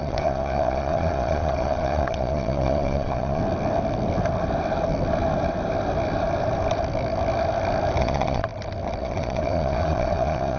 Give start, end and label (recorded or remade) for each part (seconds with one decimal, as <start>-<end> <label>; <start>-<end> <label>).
0.0-3.4 remade; 3.4-8.0 recorded; 8.0-8.5 remade; 8.5-9.0 recorded; 9.0-10.6 remade